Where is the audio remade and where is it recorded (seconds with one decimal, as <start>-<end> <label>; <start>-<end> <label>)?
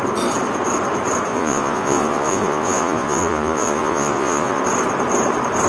0.0-1.3 recorded; 1.3-4.6 remade; 4.6-5.7 recorded